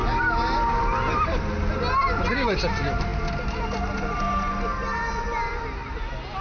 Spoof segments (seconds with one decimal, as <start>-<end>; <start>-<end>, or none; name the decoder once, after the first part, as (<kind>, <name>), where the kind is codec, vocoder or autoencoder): none